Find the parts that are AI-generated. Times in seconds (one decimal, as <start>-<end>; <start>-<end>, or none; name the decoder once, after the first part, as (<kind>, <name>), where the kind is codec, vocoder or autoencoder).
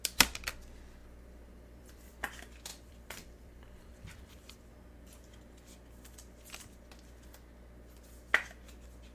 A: 1.0-2.1 (vocoder, BigVGAN v2); 2.7-4.7